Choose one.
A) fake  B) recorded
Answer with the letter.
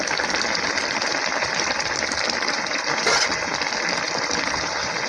A